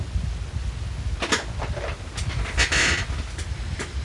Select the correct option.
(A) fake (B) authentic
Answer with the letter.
B